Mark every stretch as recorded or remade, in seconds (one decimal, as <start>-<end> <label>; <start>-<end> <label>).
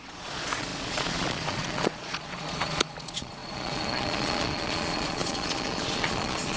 0.0-6.6 remade